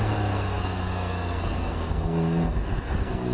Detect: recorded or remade remade